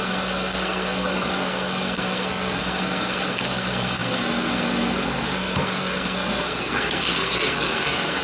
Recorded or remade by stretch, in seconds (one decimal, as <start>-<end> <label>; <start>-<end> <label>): 0.0-8.2 remade

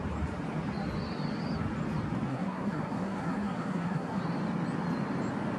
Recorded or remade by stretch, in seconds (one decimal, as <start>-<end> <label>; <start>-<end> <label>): 0.0-2.3 recorded; 2.3-4.2 remade; 4.2-5.6 recorded

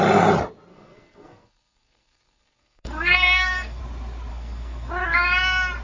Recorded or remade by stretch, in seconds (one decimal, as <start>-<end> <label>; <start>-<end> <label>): 0.0-0.7 recorded; 0.7-3.8 remade; 3.8-4.3 recorded; 4.3-4.9 remade; 4.9-5.8 recorded

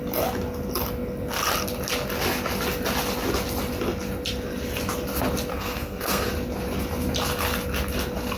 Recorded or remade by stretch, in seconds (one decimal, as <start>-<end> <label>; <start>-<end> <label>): 0.0-5.5 recorded; 5.5-6.3 remade; 6.3-8.4 recorded

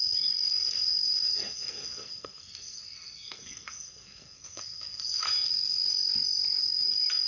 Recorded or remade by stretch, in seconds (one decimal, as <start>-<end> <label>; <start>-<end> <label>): 0.0-5.8 remade; 5.8-6.6 recorded; 6.6-7.3 remade

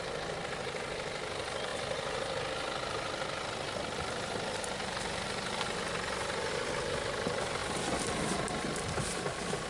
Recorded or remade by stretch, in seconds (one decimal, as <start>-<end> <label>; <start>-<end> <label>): 0.0-9.7 recorded